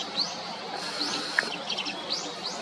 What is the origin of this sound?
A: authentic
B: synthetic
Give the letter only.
B